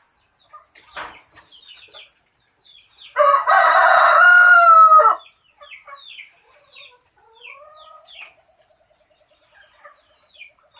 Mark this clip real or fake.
real